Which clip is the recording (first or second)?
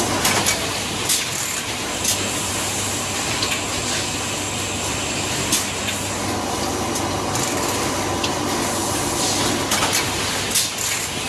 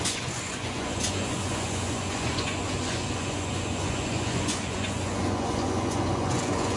first